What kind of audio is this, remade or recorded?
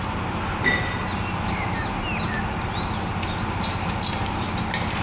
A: recorded